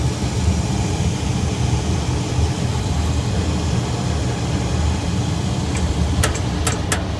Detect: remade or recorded recorded